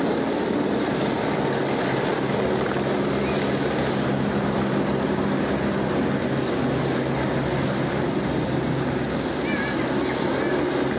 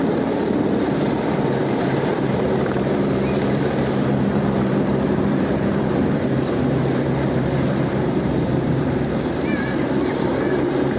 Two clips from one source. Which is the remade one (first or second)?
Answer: second